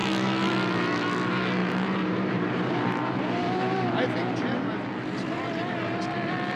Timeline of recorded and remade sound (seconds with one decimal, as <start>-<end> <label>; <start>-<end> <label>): 0.0-1.6 recorded; 1.6-4.8 remade; 4.8-6.6 recorded